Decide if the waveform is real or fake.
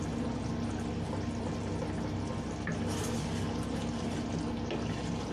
real